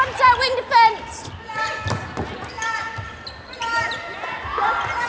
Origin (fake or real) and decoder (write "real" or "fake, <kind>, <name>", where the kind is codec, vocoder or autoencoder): real